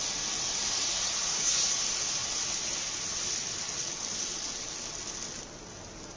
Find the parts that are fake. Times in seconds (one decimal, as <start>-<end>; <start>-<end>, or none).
0.8-1.8